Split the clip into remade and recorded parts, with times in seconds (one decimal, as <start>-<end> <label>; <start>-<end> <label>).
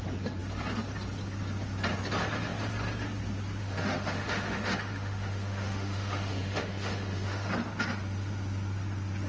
0.0-3.6 recorded; 3.6-7.5 remade; 7.5-9.3 recorded